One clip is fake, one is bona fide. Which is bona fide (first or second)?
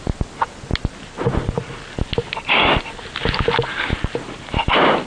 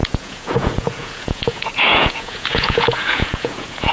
first